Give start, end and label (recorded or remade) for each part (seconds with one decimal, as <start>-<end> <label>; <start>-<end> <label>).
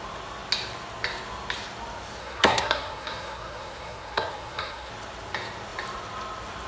0.0-2.2 recorded; 2.2-4.9 remade; 4.9-6.7 recorded